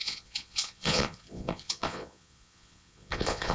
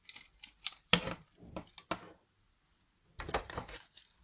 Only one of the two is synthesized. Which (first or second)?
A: first